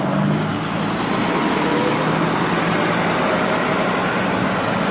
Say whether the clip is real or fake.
real